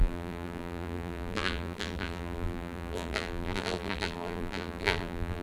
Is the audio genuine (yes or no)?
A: no